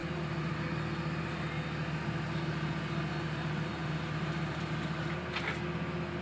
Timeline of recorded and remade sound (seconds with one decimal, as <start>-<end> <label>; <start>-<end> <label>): 0.0-6.2 recorded

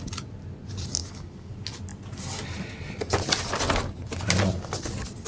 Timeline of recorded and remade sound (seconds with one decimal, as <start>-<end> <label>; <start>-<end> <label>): 0.0-1.0 recorded; 1.0-1.5 remade; 1.5-5.3 recorded

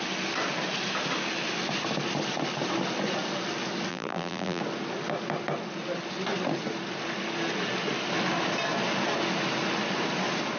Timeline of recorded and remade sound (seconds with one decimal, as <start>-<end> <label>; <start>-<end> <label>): 0.0-3.9 recorded; 3.9-4.6 remade; 4.6-10.6 recorded

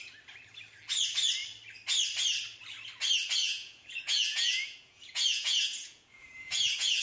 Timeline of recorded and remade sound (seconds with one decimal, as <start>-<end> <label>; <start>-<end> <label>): 0.0-3.4 recorded; 3.4-7.0 remade